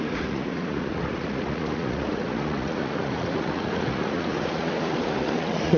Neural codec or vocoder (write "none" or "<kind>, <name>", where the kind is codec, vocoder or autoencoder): vocoder, Vocos